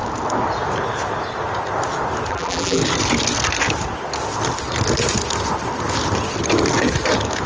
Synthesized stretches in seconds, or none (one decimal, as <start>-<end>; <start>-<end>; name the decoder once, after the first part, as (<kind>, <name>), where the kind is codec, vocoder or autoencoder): 2.3-2.8 (vocoder, BigVGAN v2)